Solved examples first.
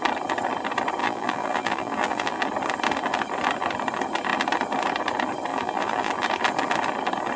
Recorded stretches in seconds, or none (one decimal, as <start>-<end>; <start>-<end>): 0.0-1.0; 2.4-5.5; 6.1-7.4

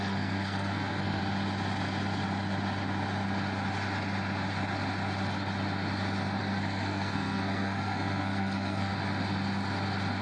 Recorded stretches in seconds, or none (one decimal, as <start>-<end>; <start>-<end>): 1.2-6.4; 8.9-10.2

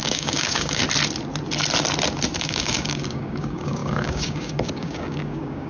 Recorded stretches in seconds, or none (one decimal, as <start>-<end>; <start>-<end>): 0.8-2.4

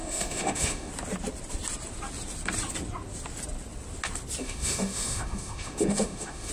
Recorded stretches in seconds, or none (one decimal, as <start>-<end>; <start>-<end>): 0.9-4.4

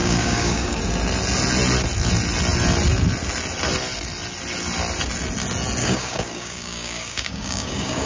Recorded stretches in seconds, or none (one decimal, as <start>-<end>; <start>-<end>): 0.8-5.8

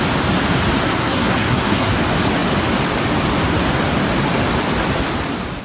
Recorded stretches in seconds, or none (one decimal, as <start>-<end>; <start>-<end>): 0.0-0.8; 1.9-5.6

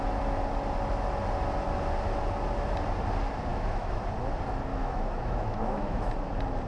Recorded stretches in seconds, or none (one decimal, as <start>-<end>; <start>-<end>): 0.0-3.5; 4.0-4.7; 6.1-6.7

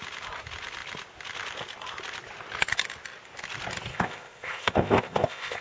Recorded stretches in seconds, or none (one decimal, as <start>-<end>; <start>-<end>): 0.0-3.9